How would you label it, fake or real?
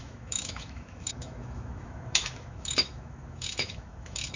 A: fake